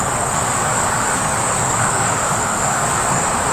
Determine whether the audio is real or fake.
fake